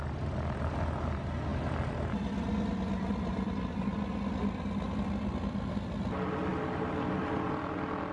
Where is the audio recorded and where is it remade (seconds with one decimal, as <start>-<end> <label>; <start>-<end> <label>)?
0.0-8.1 recorded